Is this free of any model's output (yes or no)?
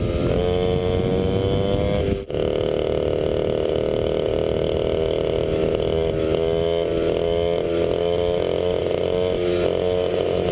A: yes